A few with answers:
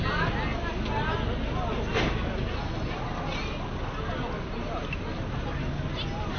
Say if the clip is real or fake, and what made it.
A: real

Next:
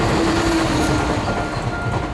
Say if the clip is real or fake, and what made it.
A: real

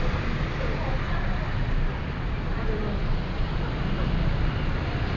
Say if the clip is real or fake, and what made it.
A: real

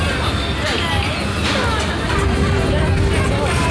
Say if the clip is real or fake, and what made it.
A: real